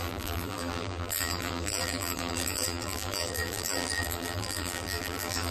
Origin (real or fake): fake